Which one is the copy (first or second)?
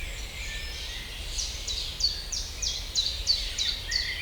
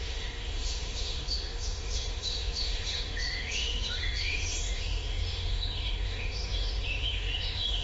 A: second